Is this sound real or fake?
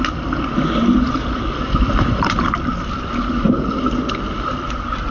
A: real